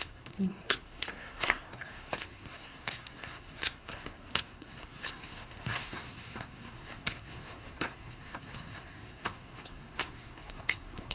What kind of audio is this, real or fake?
fake